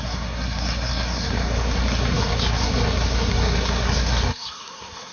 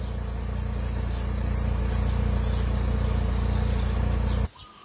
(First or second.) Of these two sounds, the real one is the second